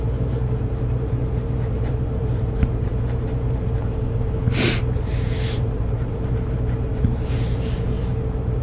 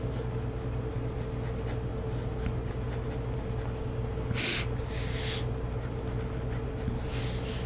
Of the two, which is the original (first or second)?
second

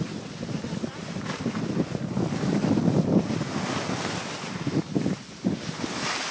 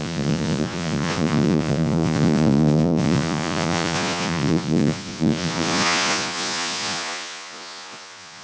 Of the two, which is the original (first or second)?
first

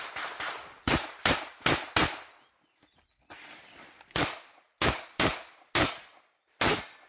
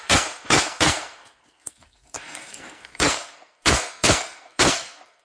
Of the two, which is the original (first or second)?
first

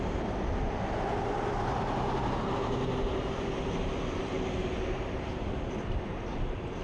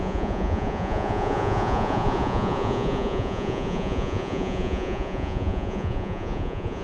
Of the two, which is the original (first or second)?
first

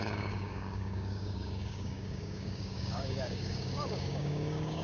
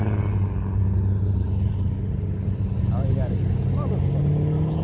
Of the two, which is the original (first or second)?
second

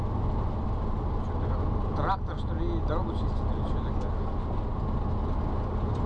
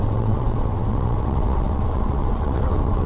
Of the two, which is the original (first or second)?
first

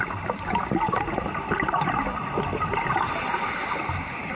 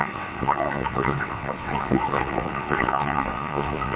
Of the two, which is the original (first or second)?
first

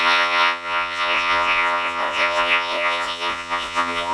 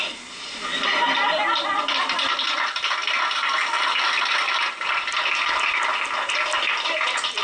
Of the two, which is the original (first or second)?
second